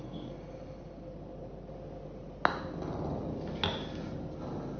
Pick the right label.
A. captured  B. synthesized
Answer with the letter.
A